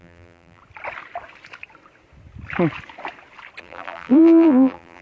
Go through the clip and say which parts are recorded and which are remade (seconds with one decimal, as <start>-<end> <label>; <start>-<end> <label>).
0.0-0.6 remade; 0.6-3.6 recorded; 3.6-5.0 remade